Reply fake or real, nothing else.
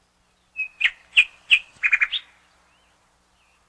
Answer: real